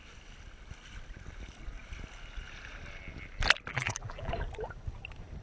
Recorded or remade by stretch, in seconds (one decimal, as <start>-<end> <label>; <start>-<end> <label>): 0.0-3.7 recorded; 3.7-4.3 remade; 4.3-5.4 recorded